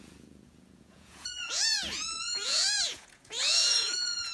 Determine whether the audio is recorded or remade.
remade